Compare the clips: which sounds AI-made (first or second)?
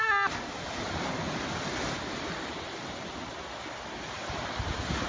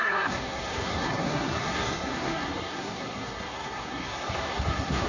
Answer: second